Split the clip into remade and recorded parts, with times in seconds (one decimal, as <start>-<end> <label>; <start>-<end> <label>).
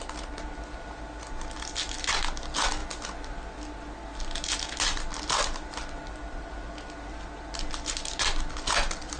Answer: 0.0-9.2 recorded